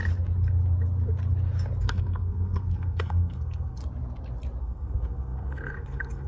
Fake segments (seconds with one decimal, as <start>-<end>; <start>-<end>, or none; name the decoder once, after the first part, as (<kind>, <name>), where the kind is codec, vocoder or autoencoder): 1.8-3.8 (codec, SNAC); 4.6-6.3